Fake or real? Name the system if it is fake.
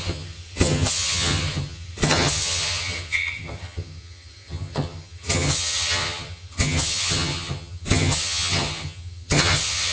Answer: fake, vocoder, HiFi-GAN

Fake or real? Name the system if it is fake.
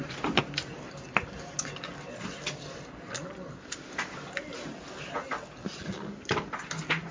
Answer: real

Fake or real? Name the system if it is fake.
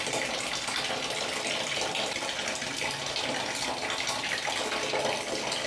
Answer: real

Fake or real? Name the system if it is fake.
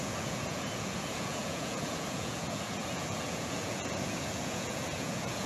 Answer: fake, vocoder, Vocos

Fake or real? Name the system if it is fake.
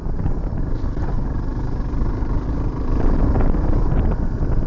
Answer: real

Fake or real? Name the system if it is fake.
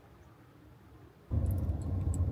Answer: real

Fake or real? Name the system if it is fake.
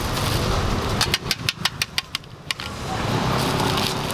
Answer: real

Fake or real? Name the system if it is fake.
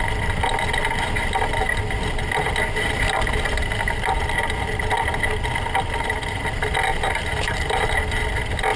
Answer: real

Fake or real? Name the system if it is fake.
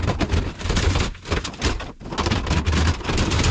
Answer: real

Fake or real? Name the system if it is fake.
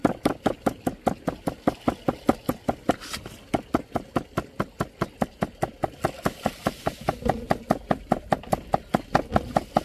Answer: real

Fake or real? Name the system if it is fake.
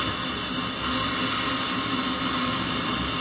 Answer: real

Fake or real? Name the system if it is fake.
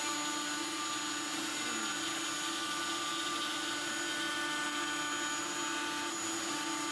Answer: real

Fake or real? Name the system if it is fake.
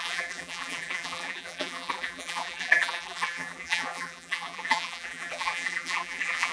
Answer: fake, vocoder, BigVGAN v2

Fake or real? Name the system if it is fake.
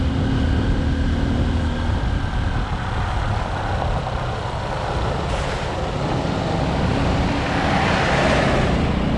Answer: real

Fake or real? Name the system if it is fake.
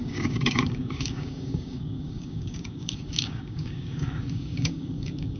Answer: fake, codec, DAC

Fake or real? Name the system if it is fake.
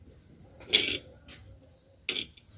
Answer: real